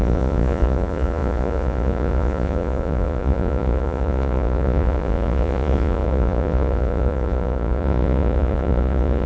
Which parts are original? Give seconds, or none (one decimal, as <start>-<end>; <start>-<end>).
none